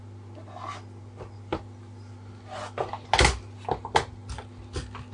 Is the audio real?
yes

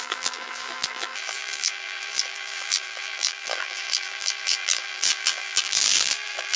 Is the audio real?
no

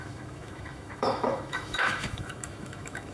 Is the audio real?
no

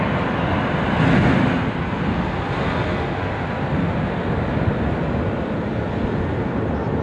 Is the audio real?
yes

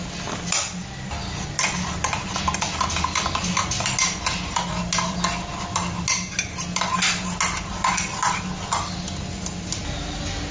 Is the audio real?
yes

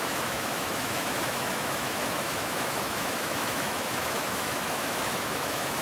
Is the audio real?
no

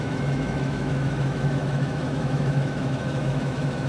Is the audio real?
no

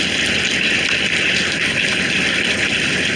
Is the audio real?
yes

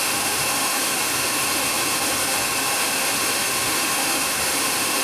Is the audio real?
no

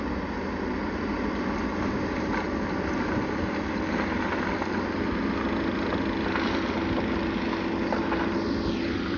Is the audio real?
yes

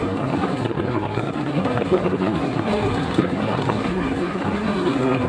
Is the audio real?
no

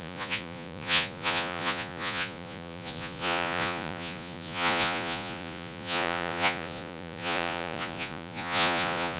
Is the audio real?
no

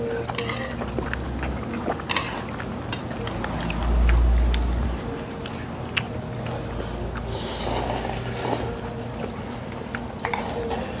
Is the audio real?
yes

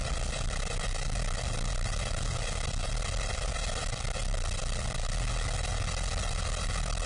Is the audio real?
yes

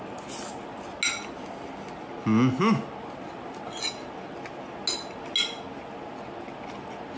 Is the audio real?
yes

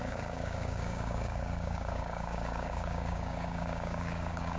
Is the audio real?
no